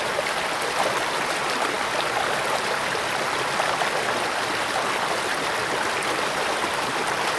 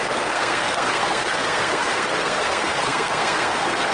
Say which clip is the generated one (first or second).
second